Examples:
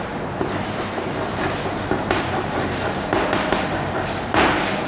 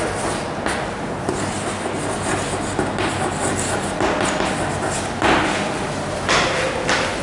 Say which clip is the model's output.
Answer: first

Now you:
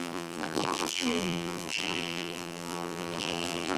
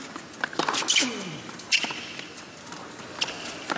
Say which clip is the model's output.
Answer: first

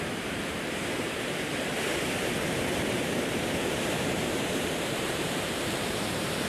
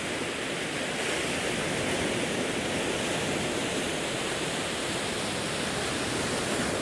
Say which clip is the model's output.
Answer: first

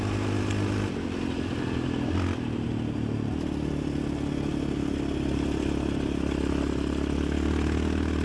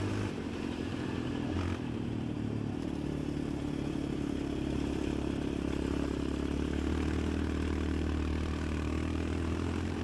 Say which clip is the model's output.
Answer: second